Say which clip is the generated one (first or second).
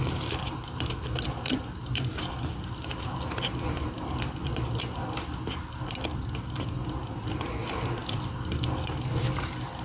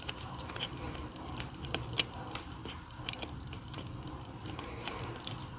second